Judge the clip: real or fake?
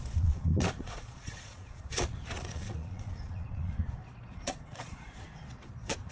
fake